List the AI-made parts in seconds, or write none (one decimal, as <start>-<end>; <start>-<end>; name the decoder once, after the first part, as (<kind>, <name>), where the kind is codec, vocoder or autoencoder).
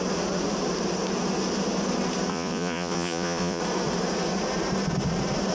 2.3-3.6 (vocoder, Vocos)